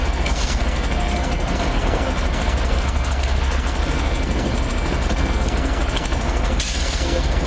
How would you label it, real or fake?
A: fake